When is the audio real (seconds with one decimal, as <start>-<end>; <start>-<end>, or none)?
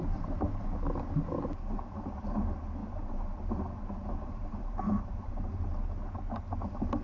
0.0-2.8; 5.5-7.0